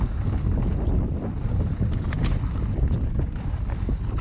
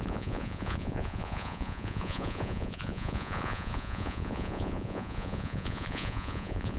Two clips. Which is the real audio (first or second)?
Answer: first